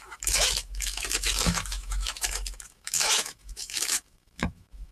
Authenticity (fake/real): fake